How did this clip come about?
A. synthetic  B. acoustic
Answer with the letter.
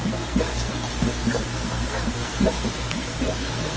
A